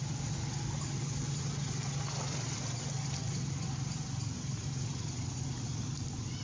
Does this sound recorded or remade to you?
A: recorded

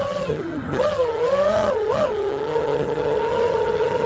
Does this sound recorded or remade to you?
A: remade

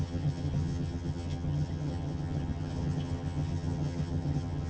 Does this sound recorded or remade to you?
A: remade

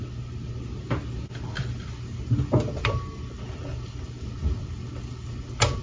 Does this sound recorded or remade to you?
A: recorded